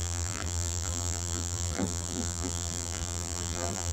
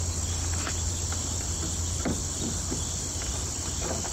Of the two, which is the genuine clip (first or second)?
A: second